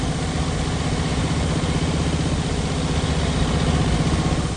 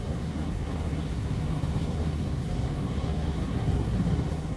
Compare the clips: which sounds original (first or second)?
first